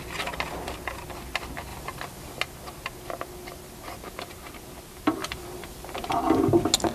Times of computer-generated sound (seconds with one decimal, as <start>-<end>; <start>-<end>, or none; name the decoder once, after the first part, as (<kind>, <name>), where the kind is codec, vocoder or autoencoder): 1.7-2.4 (vocoder, BigVGAN v2); 5.2-6.1